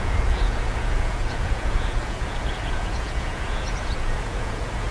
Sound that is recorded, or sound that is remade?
remade